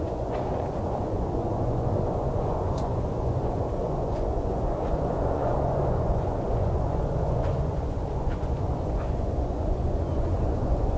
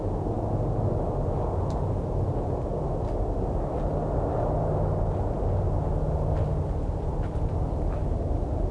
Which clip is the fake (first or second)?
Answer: first